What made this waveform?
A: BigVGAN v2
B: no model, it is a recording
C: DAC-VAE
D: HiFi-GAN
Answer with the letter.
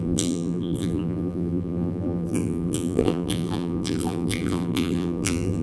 A